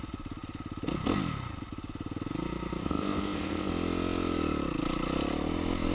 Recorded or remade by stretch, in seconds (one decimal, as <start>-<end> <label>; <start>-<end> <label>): 0.0-2.8 recorded; 2.8-3.7 remade; 3.7-5.9 recorded